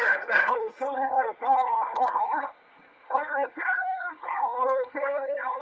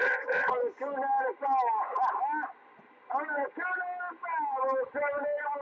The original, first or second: second